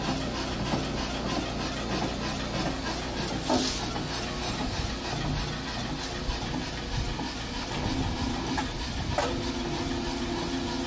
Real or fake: real